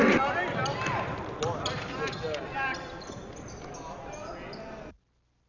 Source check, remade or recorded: recorded